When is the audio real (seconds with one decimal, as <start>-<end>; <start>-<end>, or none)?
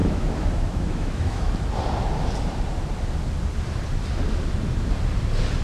1.5-5.6